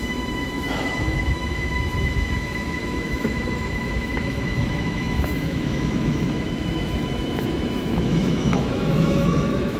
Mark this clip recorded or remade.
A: remade